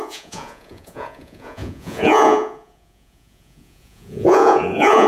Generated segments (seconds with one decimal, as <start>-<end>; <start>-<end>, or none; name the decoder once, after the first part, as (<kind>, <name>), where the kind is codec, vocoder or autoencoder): 0.0-5.1 (vocoder, Vocos)

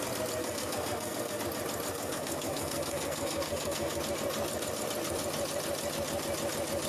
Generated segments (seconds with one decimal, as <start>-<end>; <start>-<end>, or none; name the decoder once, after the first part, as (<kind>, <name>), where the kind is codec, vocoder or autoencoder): 0.4-1.4 (codec, SNAC); 1.9-4.0

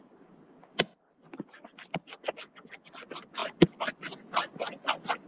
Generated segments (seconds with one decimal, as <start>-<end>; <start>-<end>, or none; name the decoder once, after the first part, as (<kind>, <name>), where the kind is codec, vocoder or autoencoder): none

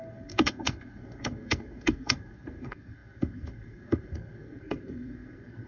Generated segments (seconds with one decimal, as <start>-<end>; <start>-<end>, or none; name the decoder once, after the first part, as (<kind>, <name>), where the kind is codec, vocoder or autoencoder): 0.0-5.7 (codec, SNAC)

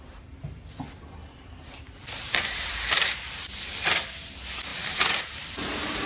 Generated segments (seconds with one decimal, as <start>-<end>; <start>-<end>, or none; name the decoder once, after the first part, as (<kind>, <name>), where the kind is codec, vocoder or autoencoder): 1.2-3.6 (vocoder, BigVGAN v2); 4.7-6.1

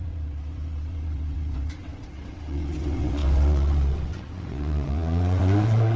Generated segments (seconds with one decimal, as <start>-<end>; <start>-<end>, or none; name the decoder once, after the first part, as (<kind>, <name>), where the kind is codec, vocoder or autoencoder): 0.0-6.0 (vocoder, WaveNeXt)

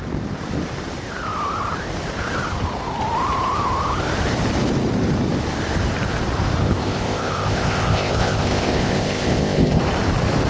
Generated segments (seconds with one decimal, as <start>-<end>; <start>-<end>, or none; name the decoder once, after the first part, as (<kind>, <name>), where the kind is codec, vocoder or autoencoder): 6.6-9.8 (codec, ZipCodec)

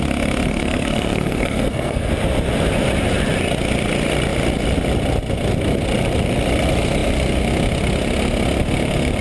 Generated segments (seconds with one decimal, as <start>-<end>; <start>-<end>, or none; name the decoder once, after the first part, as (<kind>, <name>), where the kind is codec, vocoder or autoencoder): 0.5-2.1 (codec, SNAC)